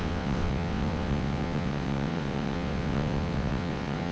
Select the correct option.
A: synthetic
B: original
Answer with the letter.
A